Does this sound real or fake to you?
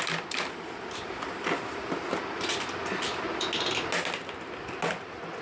real